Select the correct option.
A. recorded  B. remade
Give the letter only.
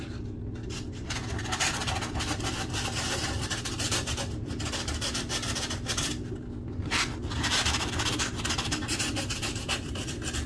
B